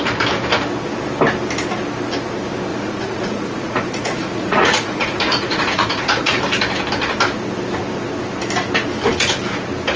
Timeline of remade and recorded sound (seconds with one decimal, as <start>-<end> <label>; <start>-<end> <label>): 0.0-2.7 recorded; 2.7-6.4 remade; 6.4-10.0 recorded